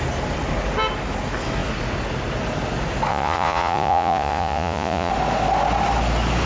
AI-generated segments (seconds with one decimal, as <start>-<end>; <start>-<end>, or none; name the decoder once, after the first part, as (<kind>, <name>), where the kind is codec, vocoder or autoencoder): 3.1-5.1 (vocoder, Vocos)